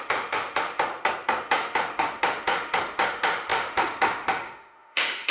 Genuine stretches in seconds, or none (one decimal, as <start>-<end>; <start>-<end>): 0.9-1.4